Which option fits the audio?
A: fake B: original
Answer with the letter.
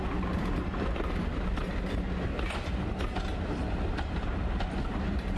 B